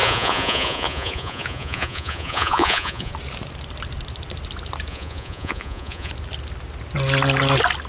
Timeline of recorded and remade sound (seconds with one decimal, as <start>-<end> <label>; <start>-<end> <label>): 0.0-3.1 remade; 3.1-4.9 recorded; 4.9-6.1 remade; 6.1-7.9 recorded